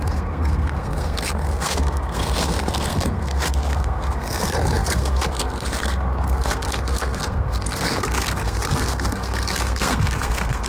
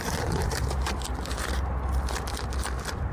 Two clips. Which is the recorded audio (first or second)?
second